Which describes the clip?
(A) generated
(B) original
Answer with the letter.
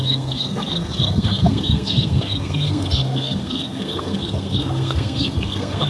A